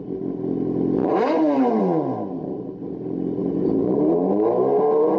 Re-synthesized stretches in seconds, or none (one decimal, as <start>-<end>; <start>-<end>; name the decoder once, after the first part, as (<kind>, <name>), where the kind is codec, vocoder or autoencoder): 1.0-1.8 (vocoder, BigVGAN v2); 3.4-5.2